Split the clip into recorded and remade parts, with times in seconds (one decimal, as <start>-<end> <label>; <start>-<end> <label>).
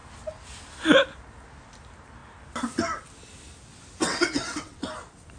0.0-4.0 recorded; 4.0-4.8 remade; 4.8-5.4 recorded